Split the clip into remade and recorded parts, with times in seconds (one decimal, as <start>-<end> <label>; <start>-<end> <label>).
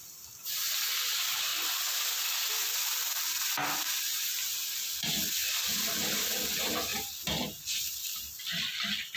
0.0-6.9 recorded; 6.9-9.2 remade